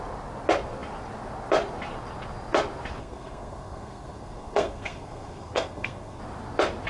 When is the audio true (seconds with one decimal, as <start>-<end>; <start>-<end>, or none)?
0.0-3.0; 6.2-6.9